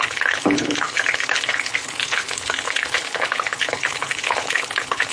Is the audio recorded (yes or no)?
no